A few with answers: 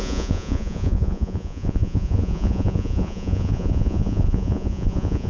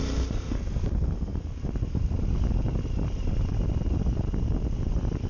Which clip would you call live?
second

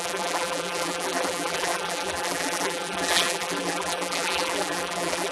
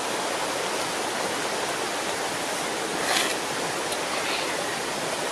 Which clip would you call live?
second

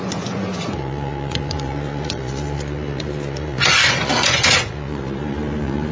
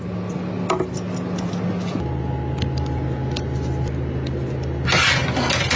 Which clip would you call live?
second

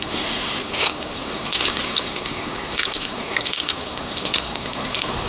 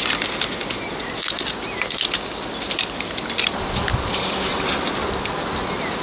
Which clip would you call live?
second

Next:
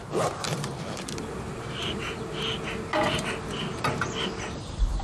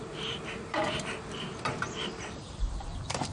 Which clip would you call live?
first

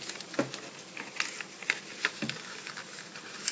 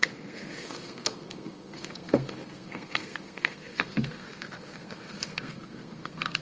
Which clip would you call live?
first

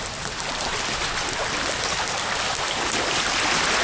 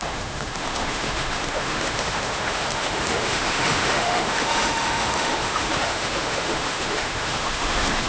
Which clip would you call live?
first